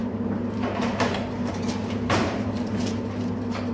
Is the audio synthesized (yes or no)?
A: yes